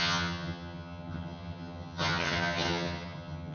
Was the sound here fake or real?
fake